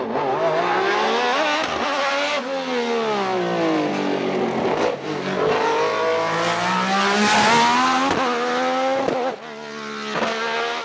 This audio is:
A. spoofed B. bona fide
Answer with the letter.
B